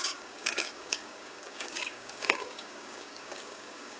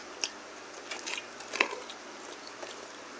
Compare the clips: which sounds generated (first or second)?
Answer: first